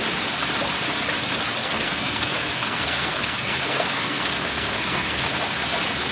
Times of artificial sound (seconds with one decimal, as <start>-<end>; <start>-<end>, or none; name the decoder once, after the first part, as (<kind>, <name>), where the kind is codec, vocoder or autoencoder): 1.6-5.3 (codec, SNAC)